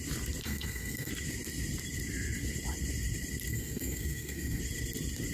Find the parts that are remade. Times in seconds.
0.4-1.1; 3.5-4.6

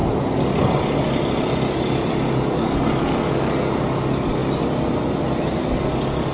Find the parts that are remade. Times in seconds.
none

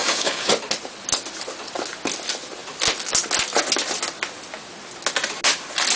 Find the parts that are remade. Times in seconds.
0.0-0.5

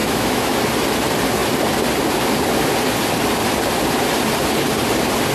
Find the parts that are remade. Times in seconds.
0.0-0.6

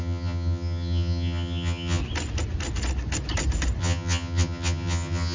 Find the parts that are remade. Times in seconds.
0.0-2.0; 3.8-5.3

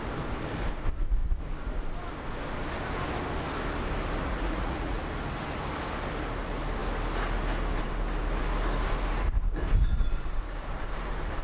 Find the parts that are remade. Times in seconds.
4.2-5.0